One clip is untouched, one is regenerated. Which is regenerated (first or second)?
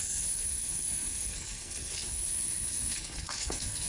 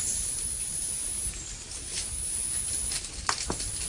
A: first